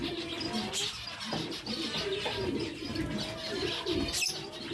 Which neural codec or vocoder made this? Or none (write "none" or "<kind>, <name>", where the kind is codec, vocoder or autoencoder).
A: none